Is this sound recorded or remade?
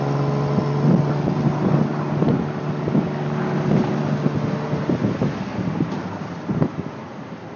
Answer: recorded